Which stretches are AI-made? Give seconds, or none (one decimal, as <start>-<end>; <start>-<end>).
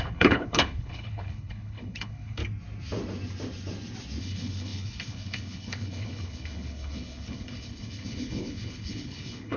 0.0-2.4; 4.2-9.6